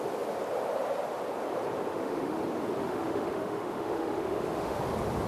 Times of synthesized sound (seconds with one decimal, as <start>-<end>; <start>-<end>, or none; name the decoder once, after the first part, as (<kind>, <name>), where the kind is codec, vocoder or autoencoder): 1.9-2.4 (autoencoder, DAC-VAE); 2.8-4.8

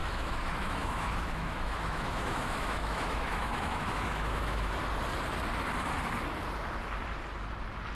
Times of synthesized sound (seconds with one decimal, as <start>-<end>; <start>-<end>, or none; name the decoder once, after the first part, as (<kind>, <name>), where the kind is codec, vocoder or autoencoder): 0.0-4.7 (autoencoder, DAC-VAE)

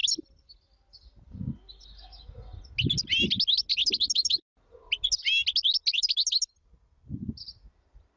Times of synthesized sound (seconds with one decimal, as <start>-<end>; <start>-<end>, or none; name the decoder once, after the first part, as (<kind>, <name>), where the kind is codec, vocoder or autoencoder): none

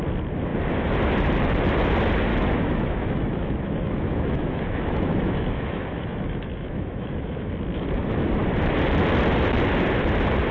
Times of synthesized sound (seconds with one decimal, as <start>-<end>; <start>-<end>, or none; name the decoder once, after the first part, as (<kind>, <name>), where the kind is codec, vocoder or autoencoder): 2.3-7.5 (autoencoder, DAC-VAE)

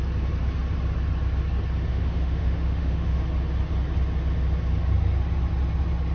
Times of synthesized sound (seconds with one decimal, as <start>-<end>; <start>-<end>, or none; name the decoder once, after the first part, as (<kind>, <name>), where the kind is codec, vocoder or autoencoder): 1.9-3.2 (autoencoder, DAC-VAE)